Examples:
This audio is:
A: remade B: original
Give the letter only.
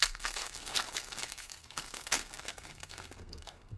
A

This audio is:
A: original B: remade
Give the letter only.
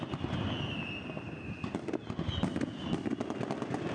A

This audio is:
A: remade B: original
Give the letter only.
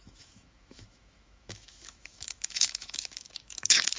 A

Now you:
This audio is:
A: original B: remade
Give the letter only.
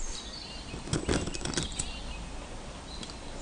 A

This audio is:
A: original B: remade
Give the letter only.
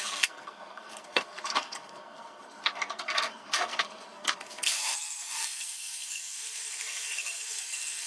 B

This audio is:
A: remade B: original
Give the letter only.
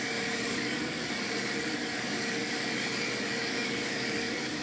A